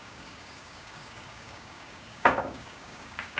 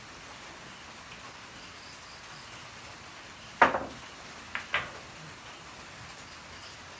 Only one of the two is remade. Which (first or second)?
first